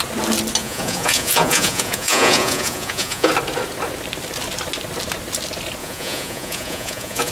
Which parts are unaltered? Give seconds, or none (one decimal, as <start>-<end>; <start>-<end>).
0.0-0.6; 3.3-5.8